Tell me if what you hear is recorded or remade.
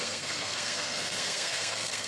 remade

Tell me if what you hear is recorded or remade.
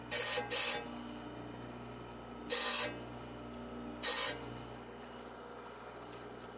recorded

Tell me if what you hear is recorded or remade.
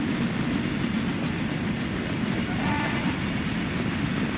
recorded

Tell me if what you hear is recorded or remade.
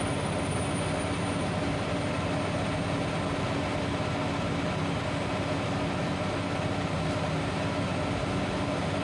recorded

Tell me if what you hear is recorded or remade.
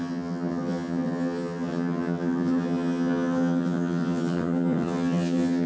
remade